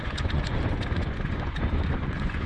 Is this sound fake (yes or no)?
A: yes